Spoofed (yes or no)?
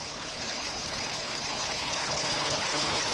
yes